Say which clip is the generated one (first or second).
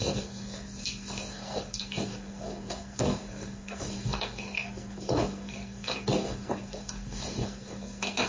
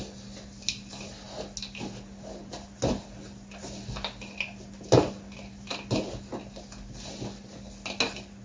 first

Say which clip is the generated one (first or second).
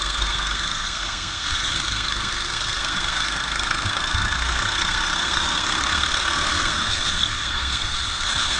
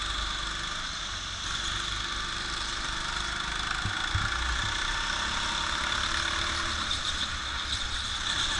first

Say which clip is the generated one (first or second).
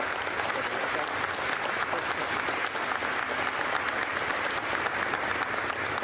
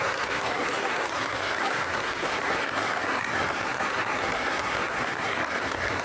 second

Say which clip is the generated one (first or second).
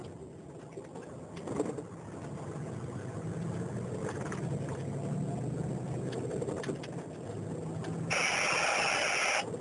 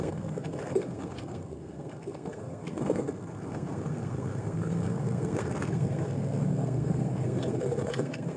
second